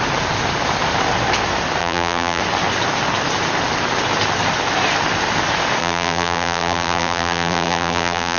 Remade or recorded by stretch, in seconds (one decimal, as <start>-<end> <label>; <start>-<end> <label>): 0.0-1.8 recorded; 1.8-2.4 remade; 2.4-5.8 recorded; 5.8-8.4 remade